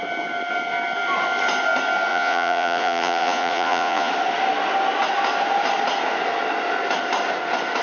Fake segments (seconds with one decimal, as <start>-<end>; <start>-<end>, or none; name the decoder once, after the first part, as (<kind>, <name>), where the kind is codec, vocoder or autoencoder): 2.1-4.1 (vocoder, Vocos)